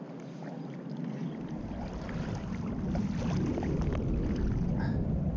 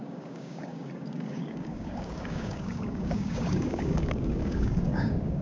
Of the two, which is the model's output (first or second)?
second